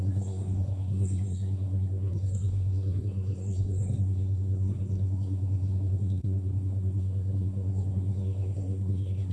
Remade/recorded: remade